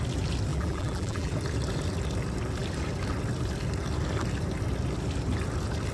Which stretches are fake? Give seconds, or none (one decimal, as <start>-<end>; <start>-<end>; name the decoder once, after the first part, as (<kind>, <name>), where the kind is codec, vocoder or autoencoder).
0.5-1.3 (vocoder, BigVGAN v2)